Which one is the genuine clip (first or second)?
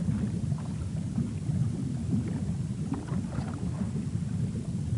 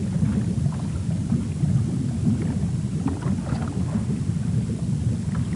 second